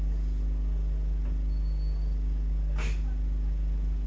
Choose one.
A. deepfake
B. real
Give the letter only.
B